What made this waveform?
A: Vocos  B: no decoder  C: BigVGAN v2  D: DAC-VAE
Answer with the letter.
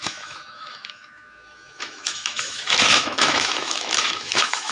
D